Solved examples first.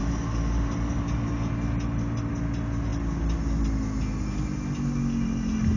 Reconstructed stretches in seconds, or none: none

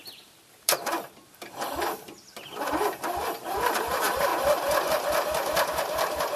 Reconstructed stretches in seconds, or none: 0.0-4.3 (vocoder, BigVGAN v2); 4.9-6.4

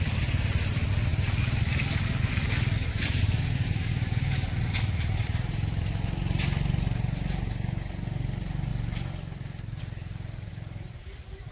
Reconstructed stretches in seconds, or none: 10.5-11.5 (vocoder, BigVGAN v2)

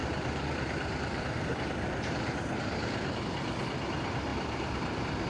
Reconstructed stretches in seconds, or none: 0.0-3.2 (vocoder, BigVGAN v2); 4.3-5.3

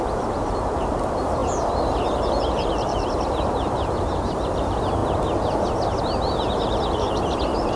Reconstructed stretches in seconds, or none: 0.0-5.0 (vocoder, BigVGAN v2); 6.0-7.8